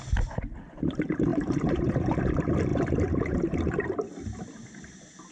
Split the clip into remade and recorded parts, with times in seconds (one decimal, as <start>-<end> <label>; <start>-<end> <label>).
0.0-1.3 recorded; 1.3-2.2 remade; 2.2-2.7 recorded; 2.7-3.3 remade; 3.3-5.3 recorded